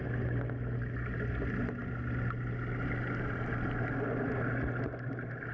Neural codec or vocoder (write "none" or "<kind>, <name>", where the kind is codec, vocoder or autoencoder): none